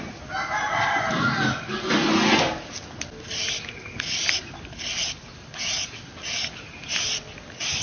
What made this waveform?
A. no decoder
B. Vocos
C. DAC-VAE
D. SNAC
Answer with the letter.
A